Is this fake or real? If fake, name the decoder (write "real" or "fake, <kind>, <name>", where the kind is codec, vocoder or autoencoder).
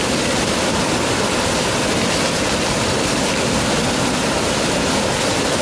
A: real